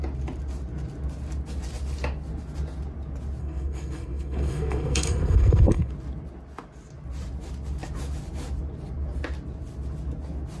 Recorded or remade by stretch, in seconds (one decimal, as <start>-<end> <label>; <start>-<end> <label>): 0.0-3.4 recorded; 3.4-5.9 remade; 5.9-10.6 recorded